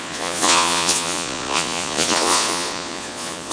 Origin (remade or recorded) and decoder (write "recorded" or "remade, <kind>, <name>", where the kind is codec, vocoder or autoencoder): remade, vocoder, Vocos